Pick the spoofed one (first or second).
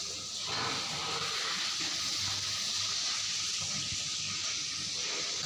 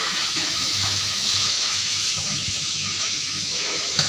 second